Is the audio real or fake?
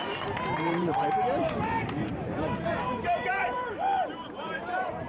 fake